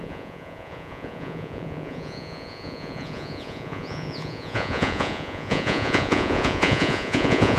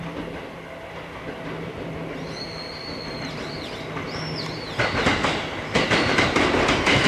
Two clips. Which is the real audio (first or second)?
second